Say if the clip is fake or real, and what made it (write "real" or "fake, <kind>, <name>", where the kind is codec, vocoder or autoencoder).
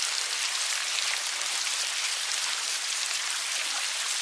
real